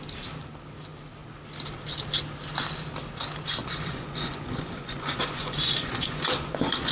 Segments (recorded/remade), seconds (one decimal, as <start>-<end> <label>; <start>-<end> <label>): 0.0-3.6 recorded; 3.6-6.9 remade